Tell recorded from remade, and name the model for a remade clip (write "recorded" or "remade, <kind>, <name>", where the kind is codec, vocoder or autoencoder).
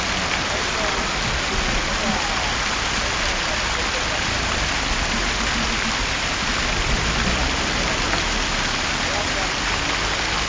recorded